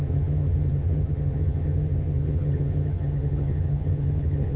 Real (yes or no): no